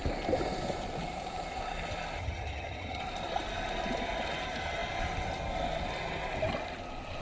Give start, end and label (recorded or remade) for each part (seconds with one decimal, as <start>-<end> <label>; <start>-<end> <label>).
0.0-2.2 recorded; 2.2-3.0 remade; 3.0-7.2 recorded